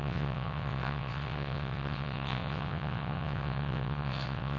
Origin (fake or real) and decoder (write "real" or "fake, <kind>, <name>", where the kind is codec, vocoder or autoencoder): fake, vocoder, WaveNeXt